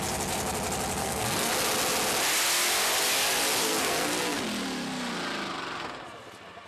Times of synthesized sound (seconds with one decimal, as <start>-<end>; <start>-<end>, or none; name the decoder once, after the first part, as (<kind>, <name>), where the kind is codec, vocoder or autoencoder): 1.0-1.5 (codec, SNAC); 3.6-4.4